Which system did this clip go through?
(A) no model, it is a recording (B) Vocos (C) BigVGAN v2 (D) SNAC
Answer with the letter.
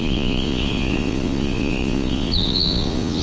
B